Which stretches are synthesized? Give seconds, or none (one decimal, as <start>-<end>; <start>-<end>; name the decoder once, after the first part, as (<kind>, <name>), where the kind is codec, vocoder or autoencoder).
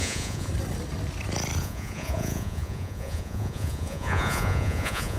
0.0-0.5 (vocoder, Vocos); 1.6-5.2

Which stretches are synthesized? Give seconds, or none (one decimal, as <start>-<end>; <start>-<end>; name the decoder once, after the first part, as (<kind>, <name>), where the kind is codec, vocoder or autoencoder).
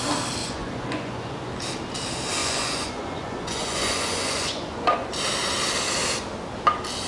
0.4-1.5 (vocoder, Vocos); 2.4-5.1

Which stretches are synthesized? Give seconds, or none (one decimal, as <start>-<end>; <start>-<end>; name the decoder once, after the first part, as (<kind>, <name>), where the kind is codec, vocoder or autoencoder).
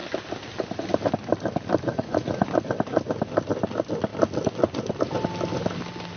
1.9-2.5 (vocoder, Vocos)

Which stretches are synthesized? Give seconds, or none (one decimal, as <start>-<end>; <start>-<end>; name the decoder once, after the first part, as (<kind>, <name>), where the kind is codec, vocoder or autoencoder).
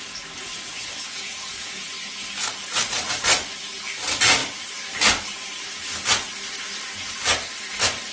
0.7-1.9 (vocoder, Vocos)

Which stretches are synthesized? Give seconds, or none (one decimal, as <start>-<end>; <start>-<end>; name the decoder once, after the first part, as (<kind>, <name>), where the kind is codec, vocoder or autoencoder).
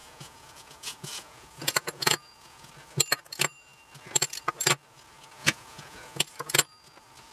0.0-2.7 (vocoder, Vocos); 5.4-6.2